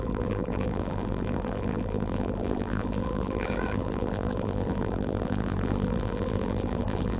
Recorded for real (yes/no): no